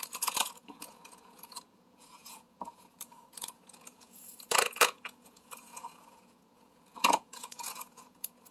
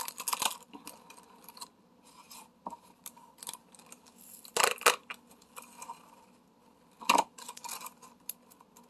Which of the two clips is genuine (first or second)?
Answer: second